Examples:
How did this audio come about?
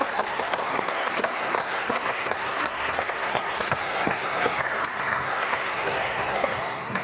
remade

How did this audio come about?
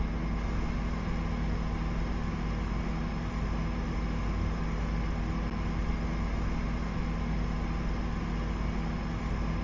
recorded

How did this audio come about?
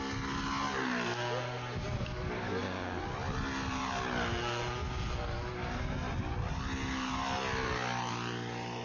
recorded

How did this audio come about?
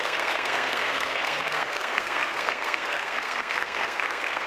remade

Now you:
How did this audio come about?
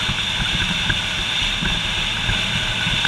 recorded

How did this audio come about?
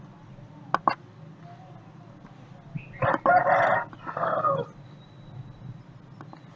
recorded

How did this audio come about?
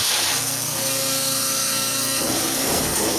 remade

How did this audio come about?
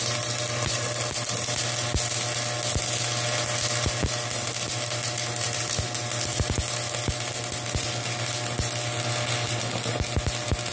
recorded